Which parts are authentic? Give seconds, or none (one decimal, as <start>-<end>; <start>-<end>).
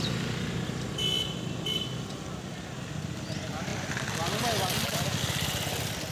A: 0.0-6.1